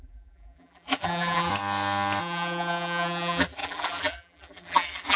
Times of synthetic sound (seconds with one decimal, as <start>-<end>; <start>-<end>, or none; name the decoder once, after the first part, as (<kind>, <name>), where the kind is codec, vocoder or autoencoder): 0.0-1.5 (vocoder, BigVGAN v2); 2.2-5.2